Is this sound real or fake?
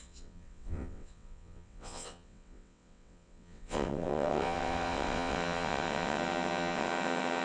fake